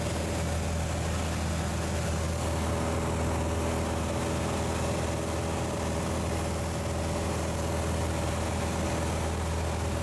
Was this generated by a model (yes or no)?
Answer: no